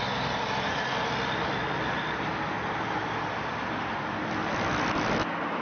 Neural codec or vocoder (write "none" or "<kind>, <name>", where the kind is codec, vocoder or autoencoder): none